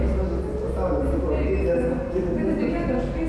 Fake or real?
real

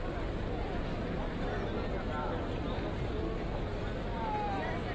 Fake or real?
real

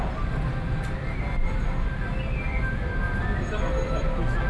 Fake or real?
fake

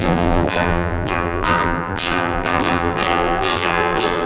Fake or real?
fake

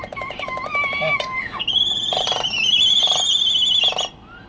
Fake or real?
real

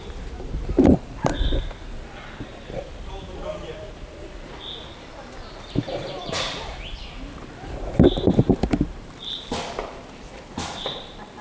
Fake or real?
fake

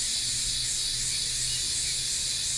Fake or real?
real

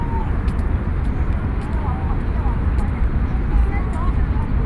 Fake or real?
real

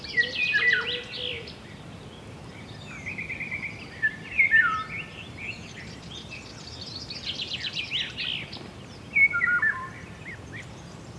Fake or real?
fake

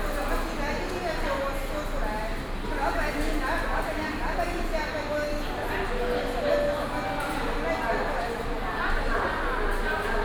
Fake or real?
real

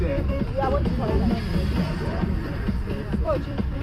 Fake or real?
fake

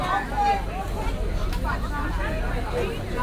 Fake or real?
real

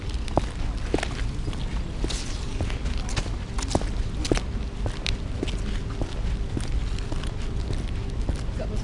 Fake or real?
real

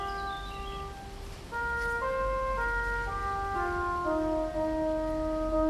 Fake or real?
real